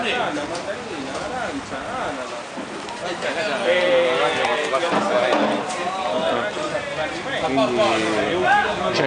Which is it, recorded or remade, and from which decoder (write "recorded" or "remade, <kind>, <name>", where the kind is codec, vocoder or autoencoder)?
recorded